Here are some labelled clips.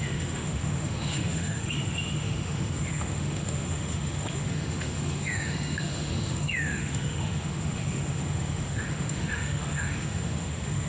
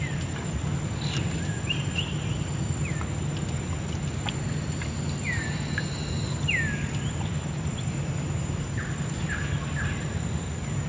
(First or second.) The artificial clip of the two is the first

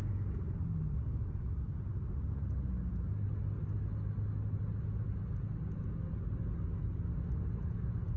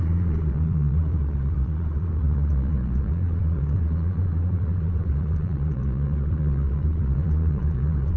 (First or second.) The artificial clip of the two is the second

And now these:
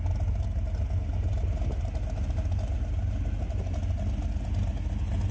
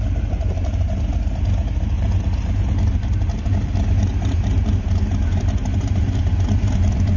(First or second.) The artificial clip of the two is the second